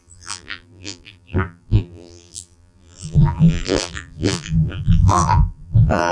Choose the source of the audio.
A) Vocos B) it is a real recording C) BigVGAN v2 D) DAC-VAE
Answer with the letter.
C